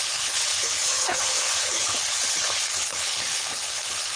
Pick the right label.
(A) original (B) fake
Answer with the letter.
B